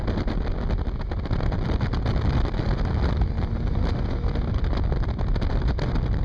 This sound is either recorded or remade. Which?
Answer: recorded